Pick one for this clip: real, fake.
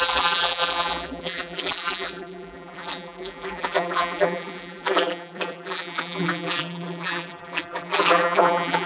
fake